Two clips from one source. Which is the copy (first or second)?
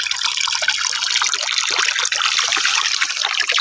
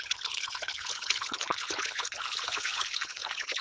second